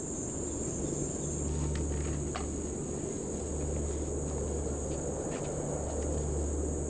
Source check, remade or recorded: recorded